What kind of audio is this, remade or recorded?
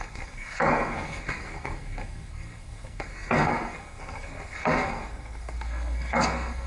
remade